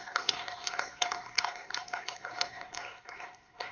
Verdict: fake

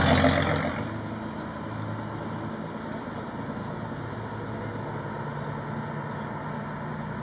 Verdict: real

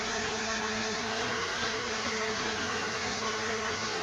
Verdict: fake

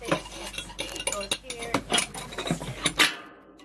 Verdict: real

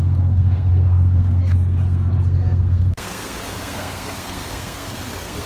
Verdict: fake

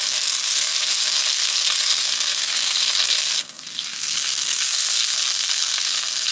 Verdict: fake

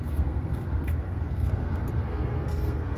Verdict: fake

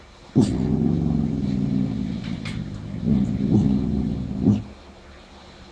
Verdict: real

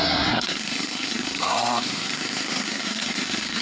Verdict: fake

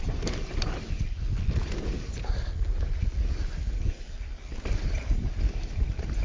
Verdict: real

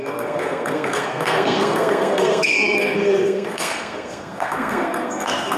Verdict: fake